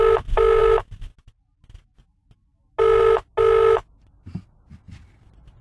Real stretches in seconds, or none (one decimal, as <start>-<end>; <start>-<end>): 0.0-5.6